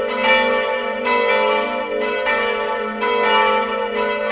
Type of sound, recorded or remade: recorded